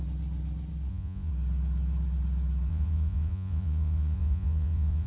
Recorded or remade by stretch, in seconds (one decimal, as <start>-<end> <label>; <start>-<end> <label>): 0.0-0.9 recorded; 0.9-1.3 remade; 1.3-2.7 recorded; 2.7-5.1 remade